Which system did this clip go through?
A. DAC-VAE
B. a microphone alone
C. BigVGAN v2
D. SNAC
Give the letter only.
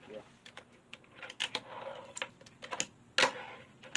B